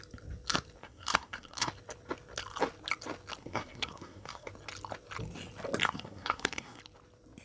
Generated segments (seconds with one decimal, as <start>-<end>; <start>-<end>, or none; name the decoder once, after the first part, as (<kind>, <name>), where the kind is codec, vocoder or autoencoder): 0.8-1.7 (codec, SNAC); 3.4-4.5; 5.8-6.8